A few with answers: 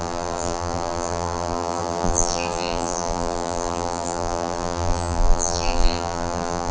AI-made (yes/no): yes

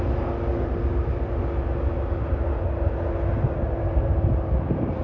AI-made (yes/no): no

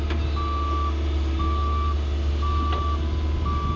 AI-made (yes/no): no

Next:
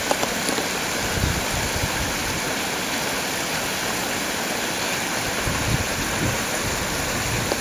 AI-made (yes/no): no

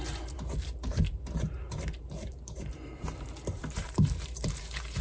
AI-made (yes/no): yes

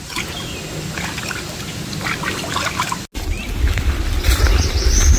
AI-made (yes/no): no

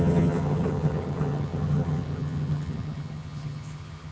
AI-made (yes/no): yes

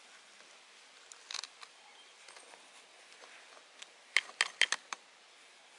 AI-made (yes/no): no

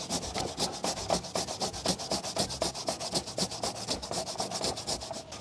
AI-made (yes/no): no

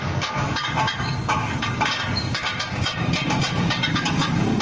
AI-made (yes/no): yes